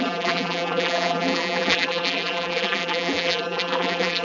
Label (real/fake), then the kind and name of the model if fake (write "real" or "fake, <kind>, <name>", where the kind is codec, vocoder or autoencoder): fake, vocoder, BigVGAN v2